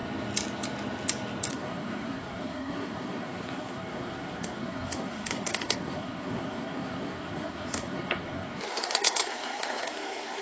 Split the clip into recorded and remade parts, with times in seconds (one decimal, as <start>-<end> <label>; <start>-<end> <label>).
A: 0.0-1.5 recorded; 1.5-10.4 remade